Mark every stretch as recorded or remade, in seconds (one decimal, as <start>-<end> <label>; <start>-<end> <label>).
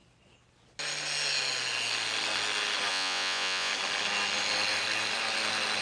0.0-2.9 recorded; 2.9-3.7 remade; 3.7-5.8 recorded